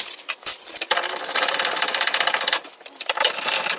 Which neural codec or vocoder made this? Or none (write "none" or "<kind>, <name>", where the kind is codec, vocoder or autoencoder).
vocoder, BigVGAN v2